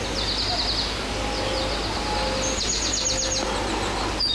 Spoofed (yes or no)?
no